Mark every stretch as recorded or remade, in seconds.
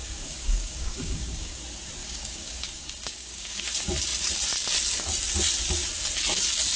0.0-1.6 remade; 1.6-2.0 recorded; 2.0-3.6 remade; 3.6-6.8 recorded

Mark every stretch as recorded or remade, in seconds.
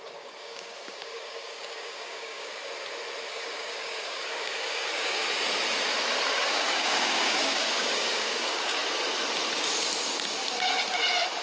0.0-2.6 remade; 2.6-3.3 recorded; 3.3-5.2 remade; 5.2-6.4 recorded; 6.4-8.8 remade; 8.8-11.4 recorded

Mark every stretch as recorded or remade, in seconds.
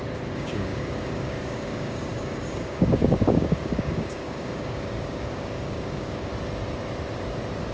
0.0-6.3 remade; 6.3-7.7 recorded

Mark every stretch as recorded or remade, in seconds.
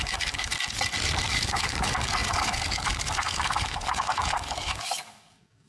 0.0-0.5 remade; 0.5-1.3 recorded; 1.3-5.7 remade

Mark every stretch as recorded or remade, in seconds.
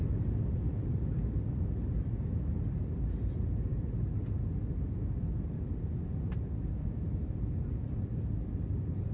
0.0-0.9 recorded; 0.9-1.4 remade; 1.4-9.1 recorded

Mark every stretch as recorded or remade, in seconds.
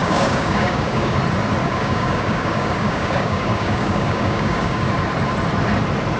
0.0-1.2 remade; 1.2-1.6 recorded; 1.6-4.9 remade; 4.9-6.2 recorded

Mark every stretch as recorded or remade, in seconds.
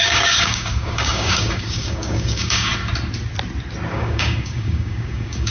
0.0-2.7 remade; 2.7-3.9 recorded; 3.9-5.5 remade